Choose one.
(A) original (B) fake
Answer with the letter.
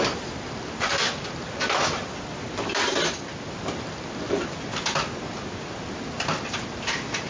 A